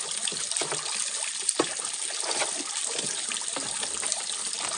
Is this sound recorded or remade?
recorded